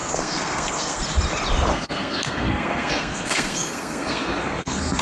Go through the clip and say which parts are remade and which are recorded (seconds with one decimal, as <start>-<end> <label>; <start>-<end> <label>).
0.0-1.0 remade; 1.0-1.7 recorded; 1.7-5.0 remade